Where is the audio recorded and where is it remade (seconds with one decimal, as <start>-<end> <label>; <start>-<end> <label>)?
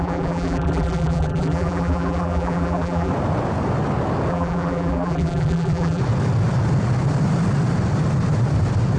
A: 0.0-3.1 remade; 3.1-4.3 recorded; 4.3-6.0 remade; 6.0-9.0 recorded